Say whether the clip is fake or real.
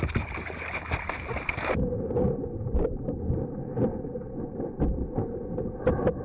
real